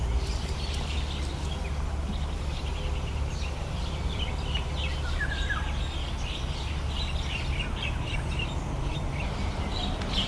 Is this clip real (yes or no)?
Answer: yes